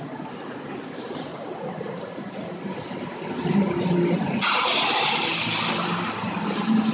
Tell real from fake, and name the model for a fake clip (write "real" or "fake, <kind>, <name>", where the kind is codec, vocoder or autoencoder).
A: real